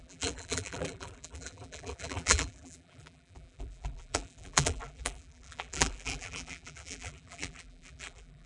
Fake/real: fake